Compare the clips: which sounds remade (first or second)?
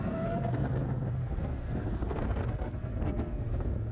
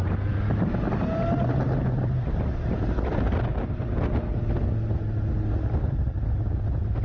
first